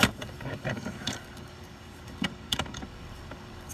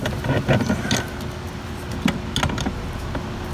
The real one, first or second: second